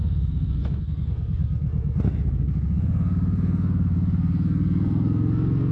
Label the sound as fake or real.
fake